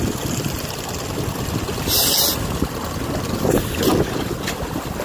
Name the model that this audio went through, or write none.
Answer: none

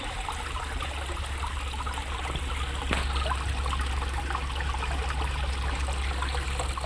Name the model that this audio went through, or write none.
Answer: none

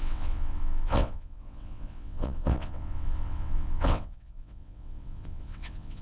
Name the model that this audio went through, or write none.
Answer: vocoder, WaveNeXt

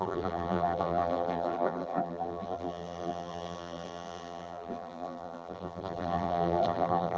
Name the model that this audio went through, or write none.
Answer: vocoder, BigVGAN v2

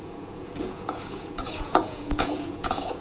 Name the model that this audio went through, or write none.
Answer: vocoder, Vocos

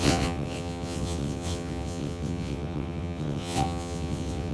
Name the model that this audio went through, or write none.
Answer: vocoder, WaveNeXt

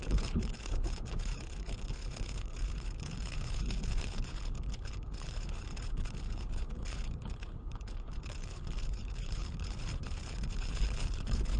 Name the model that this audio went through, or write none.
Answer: codec, HILCodec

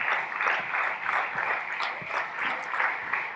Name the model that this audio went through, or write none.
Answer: none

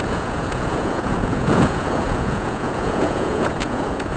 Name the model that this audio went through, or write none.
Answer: vocoder, Vocos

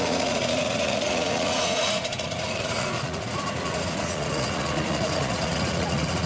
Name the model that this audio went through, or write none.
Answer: vocoder, Vocos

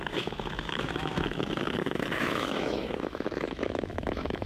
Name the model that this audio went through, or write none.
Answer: autoencoder, DAC-VAE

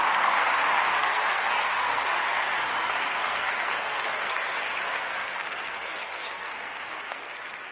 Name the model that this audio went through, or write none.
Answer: codec, SNAC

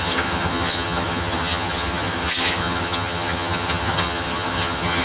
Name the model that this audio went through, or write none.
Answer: vocoder, HiFi-GAN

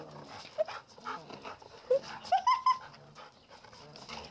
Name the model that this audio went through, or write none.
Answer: none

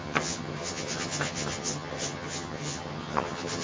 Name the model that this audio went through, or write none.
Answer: vocoder, HiFi-GAN